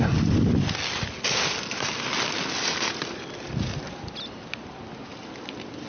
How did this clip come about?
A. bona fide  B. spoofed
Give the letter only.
A